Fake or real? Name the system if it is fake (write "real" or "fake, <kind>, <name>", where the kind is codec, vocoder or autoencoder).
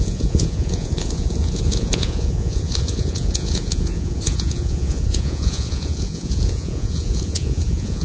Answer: fake, vocoder, Vocos